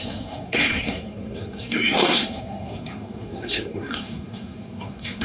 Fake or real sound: fake